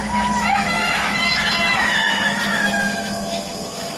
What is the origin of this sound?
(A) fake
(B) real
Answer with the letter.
A